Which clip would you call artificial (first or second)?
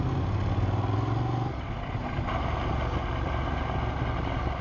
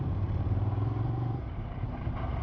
second